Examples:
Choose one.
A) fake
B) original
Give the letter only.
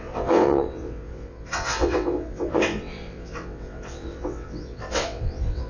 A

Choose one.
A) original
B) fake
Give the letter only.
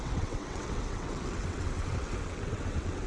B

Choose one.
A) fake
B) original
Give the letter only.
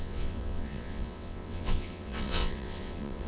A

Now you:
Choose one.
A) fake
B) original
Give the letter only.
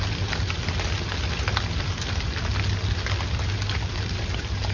B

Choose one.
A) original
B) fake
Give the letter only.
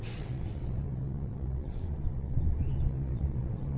B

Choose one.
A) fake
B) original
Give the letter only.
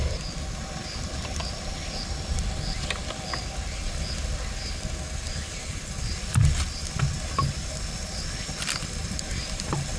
B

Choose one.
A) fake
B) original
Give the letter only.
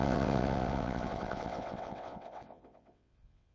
A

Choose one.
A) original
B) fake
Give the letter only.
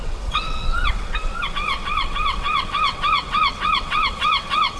B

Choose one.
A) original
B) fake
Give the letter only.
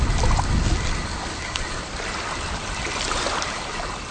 A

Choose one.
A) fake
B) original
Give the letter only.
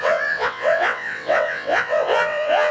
A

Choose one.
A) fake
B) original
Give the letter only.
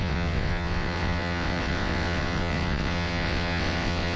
A